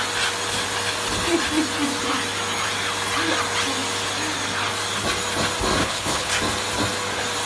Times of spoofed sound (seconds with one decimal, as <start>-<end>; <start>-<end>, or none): 5.8-6.3